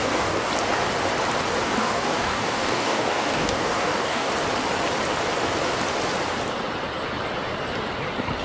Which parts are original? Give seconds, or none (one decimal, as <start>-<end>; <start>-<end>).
0.5-1.8; 4.3-8.4